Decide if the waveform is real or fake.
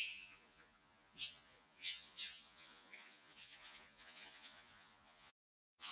fake